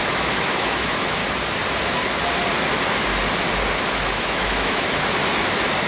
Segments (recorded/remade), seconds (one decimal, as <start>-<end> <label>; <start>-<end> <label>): 0.0-1.2 remade; 1.2-3.9 recorded; 3.9-5.2 remade; 5.2-5.9 recorded